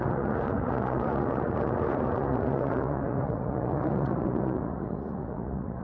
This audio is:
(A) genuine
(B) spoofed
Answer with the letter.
B